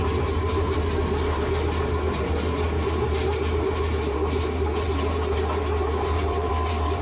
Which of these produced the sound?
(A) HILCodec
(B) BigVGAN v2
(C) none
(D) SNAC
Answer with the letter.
B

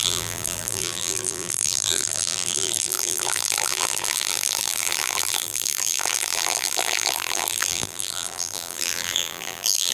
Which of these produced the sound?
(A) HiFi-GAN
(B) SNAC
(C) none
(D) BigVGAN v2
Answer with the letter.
D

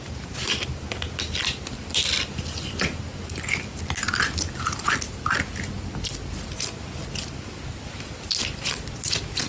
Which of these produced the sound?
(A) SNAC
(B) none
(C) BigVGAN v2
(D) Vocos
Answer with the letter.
B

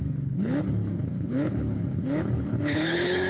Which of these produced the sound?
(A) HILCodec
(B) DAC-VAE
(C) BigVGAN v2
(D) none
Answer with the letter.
A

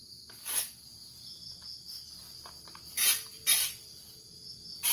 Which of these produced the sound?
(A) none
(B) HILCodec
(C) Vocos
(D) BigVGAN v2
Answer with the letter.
A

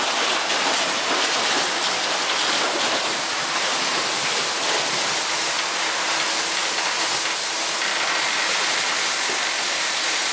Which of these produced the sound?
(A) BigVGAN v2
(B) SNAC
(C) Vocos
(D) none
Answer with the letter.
D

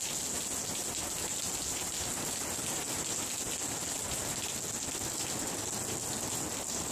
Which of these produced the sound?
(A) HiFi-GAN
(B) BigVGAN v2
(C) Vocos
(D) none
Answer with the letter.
D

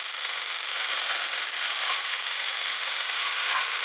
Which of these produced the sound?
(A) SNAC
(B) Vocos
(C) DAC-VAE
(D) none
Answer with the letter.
C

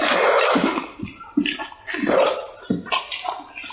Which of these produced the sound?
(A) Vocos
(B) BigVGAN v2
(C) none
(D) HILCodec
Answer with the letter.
C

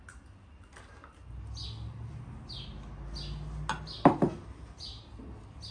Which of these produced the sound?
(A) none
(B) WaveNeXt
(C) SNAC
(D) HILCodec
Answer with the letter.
A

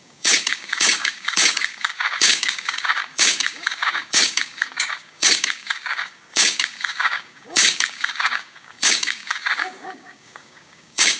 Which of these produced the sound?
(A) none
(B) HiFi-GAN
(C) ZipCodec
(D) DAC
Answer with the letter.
D